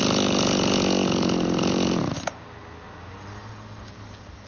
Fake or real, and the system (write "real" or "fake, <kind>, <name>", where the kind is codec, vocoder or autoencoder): real